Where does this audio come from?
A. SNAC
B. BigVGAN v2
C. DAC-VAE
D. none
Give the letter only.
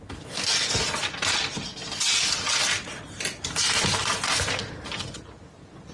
D